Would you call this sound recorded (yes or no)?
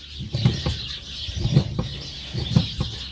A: yes